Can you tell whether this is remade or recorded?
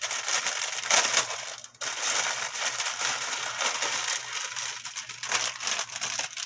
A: recorded